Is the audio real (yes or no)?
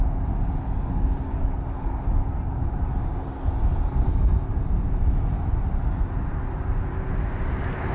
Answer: yes